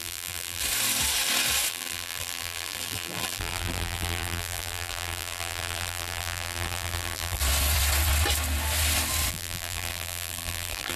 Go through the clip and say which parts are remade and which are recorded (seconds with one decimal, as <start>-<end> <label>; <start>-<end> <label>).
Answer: 0.0-0.6 remade; 0.6-1.7 recorded; 1.7-7.4 remade; 7.4-9.3 recorded; 9.3-11.0 remade